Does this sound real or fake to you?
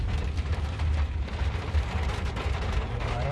real